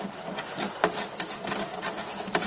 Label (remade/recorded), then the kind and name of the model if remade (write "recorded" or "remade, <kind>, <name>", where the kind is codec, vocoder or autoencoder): recorded